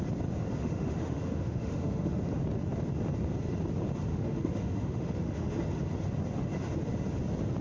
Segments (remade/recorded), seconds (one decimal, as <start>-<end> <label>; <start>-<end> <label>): 0.0-0.6 recorded; 0.6-2.2 remade; 2.2-4.1 recorded; 4.1-5.5 remade; 5.5-7.6 recorded